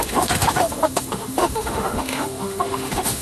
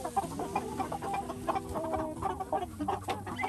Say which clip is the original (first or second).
second